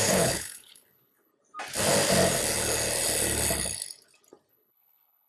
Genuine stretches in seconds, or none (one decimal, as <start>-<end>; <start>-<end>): 1.3-4.5